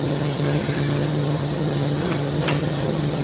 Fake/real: fake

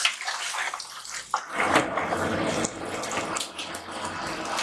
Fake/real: real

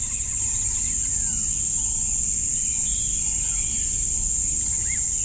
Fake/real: real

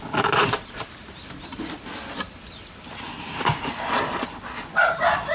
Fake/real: real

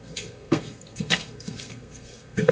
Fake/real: fake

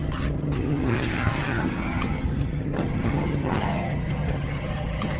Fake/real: fake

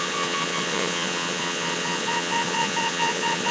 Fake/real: fake